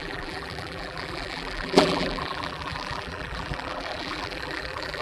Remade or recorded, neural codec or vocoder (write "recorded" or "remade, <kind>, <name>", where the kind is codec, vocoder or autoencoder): remade, vocoder, BigVGAN v2